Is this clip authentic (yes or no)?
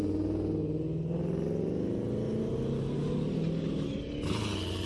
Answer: yes